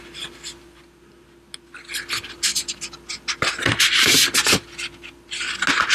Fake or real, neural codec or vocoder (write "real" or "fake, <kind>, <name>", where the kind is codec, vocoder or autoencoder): real